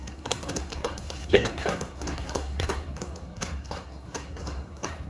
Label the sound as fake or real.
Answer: fake